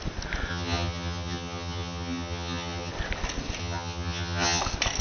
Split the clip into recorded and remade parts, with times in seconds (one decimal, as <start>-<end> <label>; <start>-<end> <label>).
0.0-0.5 recorded; 0.5-2.9 remade; 2.9-3.6 recorded; 3.6-4.6 remade; 4.6-5.0 recorded